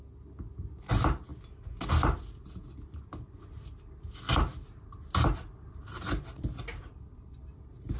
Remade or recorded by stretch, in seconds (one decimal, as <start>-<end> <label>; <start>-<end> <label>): 0.0-8.0 recorded